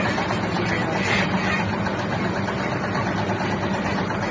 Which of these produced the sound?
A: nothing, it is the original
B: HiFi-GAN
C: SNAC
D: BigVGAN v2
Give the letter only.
A